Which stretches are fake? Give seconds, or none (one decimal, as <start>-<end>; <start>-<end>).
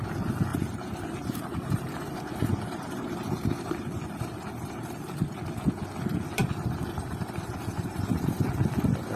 0.5-5.4; 6.4-8.5